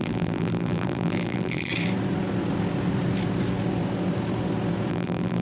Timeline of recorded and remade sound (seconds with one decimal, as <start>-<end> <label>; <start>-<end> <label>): 0.0-1.7 remade; 1.7-4.9 recorded; 4.9-5.4 remade